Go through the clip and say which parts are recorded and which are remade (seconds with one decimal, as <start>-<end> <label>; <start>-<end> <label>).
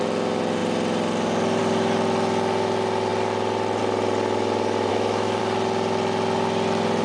0.0-4.9 recorded; 4.9-5.4 remade; 5.4-7.0 recorded